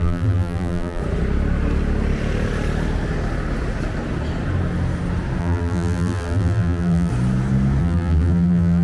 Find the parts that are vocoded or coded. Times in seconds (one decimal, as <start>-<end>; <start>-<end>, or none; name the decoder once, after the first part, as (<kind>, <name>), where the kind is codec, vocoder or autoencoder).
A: 0.0-1.0 (vocoder, BigVGAN v2); 5.4-7.1; 7.8-8.8